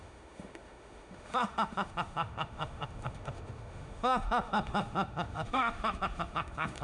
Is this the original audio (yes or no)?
no